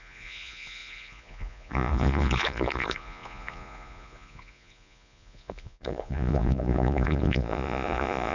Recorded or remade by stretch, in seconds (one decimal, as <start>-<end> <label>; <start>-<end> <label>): 0.0-8.3 remade